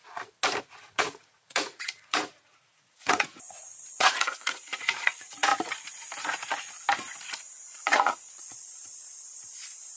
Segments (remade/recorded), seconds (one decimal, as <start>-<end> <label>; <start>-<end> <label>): 0.0-0.6 recorded; 0.6-5.5 remade; 5.5-7.3 recorded; 7.3-10.0 remade